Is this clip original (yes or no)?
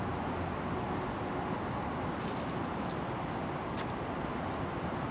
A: yes